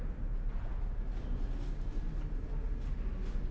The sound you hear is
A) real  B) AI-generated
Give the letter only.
A